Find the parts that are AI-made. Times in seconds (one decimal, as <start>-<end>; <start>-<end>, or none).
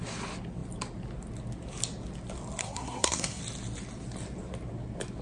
2.6-3.4